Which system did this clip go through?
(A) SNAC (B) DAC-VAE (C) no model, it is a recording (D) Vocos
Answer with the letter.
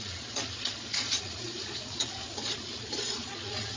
D